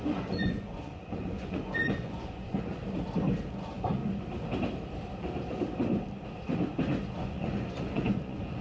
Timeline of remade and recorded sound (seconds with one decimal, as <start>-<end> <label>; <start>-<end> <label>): 0.0-2.8 remade; 2.8-3.5 recorded; 3.5-4.0 remade; 4.0-7.2 recorded; 7.2-8.6 remade